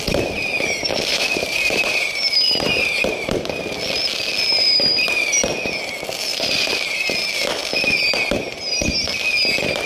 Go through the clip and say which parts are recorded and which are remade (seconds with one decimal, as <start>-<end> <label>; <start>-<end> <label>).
0.0-0.9 recorded; 0.9-3.1 remade; 3.1-6.3 recorded; 6.3-7.1 remade; 7.1-9.9 recorded

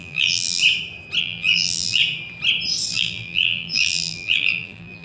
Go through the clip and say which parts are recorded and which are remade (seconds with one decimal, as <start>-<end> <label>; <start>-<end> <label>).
0.0-0.6 remade; 0.6-1.2 recorded; 1.2-2.0 remade; 2.0-2.9 recorded; 2.9-5.0 remade